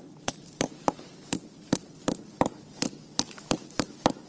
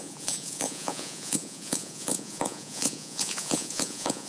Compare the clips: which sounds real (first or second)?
first